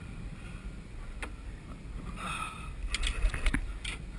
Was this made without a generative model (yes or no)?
yes